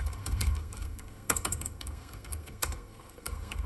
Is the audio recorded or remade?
remade